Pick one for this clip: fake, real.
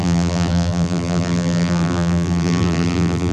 fake